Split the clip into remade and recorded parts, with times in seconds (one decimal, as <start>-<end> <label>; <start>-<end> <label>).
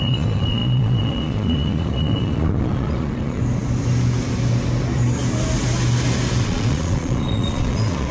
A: 0.0-3.4 remade; 3.4-6.4 recorded; 6.4-8.1 remade